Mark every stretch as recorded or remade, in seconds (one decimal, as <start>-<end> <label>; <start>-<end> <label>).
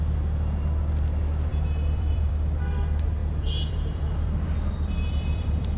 0.0-1.5 recorded; 1.5-2.3 remade; 2.3-3.2 recorded; 3.2-5.8 remade